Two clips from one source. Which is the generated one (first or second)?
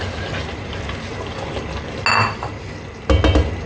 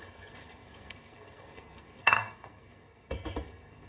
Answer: second